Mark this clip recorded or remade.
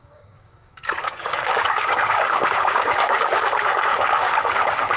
remade